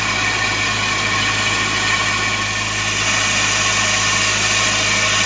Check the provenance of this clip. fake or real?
real